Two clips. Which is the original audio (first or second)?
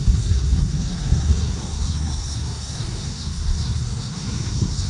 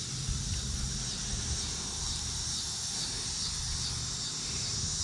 second